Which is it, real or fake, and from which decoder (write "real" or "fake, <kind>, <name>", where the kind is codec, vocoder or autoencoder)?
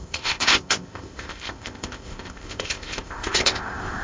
fake, codec, ZipCodec